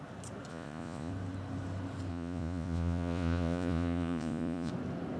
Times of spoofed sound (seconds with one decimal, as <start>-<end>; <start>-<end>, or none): 0.5-1.1; 2.1-4.7